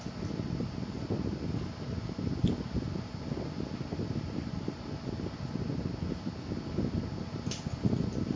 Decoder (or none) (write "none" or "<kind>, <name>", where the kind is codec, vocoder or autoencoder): none